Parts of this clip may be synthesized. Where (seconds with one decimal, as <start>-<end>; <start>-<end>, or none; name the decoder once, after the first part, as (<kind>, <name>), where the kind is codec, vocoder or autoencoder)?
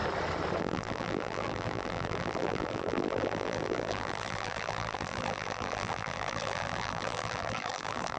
0.6-8.2 (vocoder, BigVGAN v2)